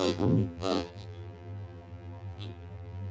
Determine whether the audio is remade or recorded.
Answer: remade